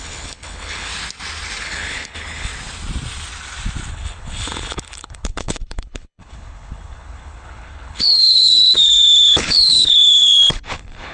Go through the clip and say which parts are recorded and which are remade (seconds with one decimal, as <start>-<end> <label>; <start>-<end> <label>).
0.0-0.9 remade; 0.9-1.6 recorded; 1.6-2.5 remade; 2.5-3.9 recorded; 3.9-11.1 remade